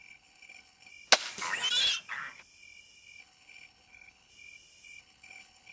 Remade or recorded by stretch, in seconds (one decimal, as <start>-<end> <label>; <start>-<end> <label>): 0.0-0.9 remade; 0.9-3.2 recorded; 3.2-4.3 remade; 4.3-5.0 recorded; 5.0-5.7 remade

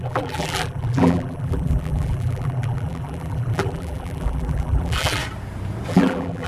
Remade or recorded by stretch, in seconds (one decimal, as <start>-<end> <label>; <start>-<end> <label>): 0.0-5.2 remade; 5.2-5.9 recorded; 5.9-6.5 remade

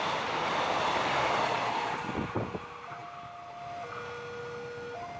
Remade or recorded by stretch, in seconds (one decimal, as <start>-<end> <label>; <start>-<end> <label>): 0.0-5.2 recorded